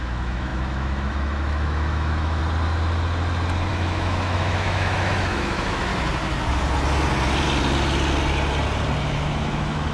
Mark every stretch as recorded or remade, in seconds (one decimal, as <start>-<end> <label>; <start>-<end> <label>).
0.0-2.4 remade; 2.4-3.7 recorded; 3.7-5.9 remade; 5.9-9.0 recorded; 9.0-9.9 remade